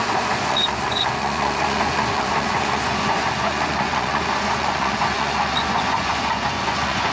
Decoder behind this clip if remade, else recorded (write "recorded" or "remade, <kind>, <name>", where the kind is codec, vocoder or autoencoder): remade, vocoder, Vocos